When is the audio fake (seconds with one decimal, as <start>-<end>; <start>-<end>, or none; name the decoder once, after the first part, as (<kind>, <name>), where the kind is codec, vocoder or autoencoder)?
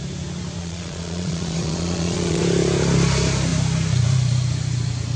0.6-2.4 (vocoder, Vocos)